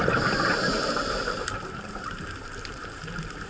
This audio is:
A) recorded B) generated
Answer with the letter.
B